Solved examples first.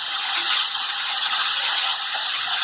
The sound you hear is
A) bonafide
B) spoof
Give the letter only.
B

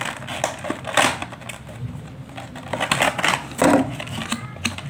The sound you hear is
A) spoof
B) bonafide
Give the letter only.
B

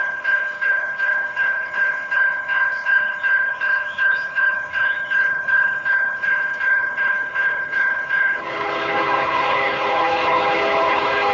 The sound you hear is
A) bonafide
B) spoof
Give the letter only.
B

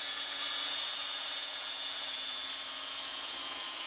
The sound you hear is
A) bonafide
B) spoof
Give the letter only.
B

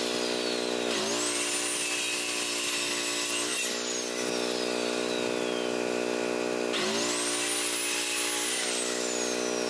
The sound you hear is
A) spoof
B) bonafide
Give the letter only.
B